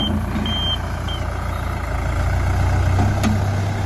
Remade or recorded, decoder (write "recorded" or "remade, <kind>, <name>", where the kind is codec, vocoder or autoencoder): recorded